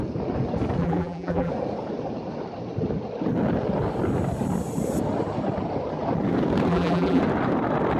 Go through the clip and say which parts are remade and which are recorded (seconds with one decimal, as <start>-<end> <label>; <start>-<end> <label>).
0.0-0.8 recorded; 0.8-1.5 remade; 1.5-6.7 recorded; 6.7-7.2 remade; 7.2-8.0 recorded